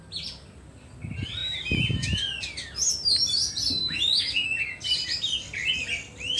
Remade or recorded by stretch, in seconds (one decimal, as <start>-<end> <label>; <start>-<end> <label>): 0.0-3.8 recorded; 3.8-4.6 remade; 4.6-6.4 recorded